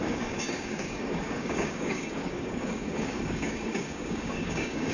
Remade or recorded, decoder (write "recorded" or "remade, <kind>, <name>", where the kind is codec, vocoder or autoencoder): remade, codec, DAC